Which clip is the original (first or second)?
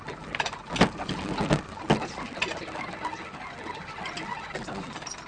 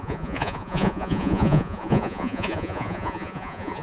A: first